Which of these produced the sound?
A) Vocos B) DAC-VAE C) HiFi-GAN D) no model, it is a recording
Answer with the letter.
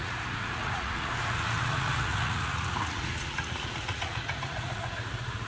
A